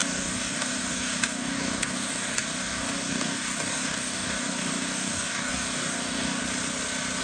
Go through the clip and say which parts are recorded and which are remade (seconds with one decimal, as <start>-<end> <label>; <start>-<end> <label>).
0.0-6.4 remade; 6.4-7.2 recorded